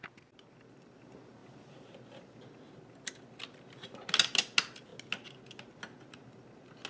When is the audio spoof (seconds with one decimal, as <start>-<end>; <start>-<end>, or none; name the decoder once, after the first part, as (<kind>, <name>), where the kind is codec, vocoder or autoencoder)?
none